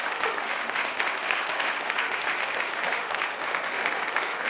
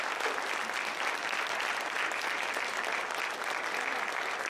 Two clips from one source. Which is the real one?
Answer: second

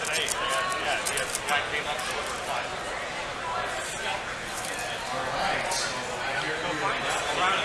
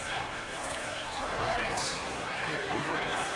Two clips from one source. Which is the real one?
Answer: first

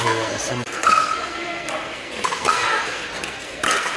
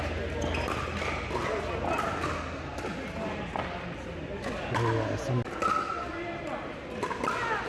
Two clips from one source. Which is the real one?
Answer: second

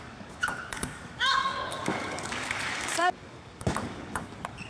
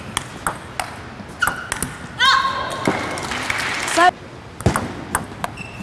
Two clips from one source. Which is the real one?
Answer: second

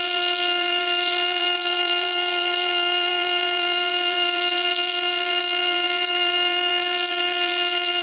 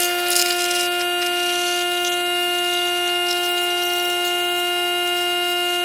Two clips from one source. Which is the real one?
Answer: second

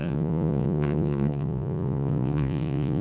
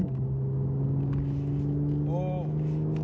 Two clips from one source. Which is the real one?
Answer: second